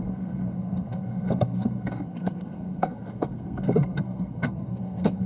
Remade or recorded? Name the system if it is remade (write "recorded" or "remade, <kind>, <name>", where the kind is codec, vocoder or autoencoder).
remade, codec, SNAC